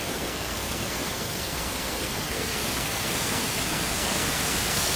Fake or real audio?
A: fake